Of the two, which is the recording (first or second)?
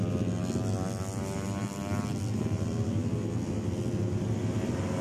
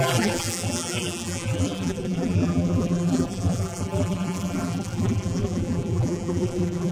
first